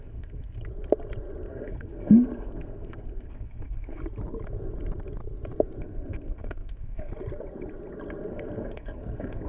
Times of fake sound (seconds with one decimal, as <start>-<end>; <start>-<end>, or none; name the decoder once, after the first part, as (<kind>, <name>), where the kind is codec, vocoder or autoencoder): 0.0-0.6 (codec, SNAC); 1.5-4.0; 5.8-7.1; 8.3-9.5

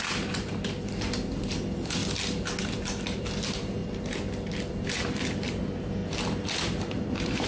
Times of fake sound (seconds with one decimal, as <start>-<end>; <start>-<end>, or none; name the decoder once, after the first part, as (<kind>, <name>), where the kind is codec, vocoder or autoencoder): 0.0-2.0 (vocoder, BigVGAN v2); 2.6-3.8; 4.7-6.0; 6.8-7.5

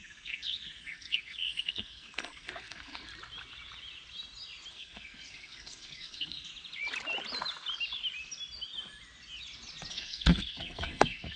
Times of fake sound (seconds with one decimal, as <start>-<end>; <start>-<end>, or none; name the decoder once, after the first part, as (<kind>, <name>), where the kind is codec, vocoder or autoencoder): 0.0-3.1 (codec, SNAC); 4.7-6.5; 9.9-11.4

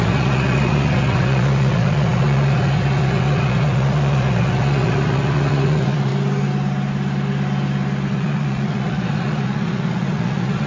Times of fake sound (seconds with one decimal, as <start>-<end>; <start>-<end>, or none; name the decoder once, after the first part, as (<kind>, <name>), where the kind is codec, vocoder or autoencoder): 0.0-6.1 (vocoder, Vocos); 8.1-10.7

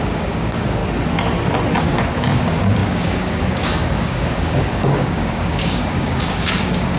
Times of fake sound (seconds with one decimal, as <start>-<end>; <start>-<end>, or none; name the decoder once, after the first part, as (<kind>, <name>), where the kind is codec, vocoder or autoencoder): 0.0-0.8 (codec, DAC); 1.8-7.0

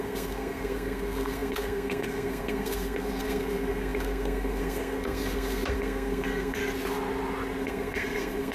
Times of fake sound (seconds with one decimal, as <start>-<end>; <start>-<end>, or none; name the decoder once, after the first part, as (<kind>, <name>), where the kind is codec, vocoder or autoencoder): 0.0-6.6 (codec, SNAC); 7.6-8.5

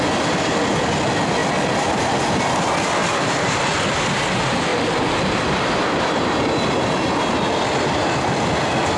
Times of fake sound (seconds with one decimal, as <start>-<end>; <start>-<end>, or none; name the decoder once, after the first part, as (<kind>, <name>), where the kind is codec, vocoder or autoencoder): 3.0-3.6 (vocoder, BigVGAN v2); 4.7-6.4

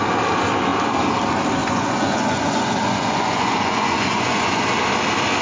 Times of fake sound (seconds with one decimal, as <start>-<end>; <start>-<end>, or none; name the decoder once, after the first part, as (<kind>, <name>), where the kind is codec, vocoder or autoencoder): 1.6-4.6 (vocoder, Vocos)